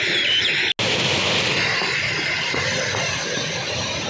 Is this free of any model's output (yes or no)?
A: yes